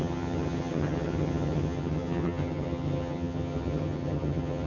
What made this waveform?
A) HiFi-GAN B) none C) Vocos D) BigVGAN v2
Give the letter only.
A